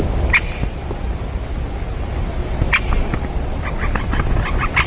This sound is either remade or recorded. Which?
recorded